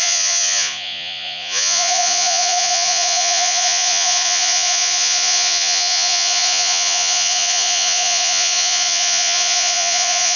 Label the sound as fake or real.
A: fake